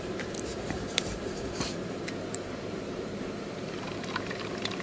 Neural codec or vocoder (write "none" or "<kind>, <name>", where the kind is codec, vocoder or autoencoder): vocoder, BigVGAN v2